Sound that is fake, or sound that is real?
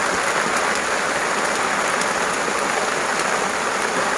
real